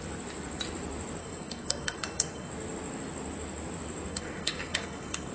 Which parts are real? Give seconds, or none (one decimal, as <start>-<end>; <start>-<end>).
0.0-1.2; 2.5-4.1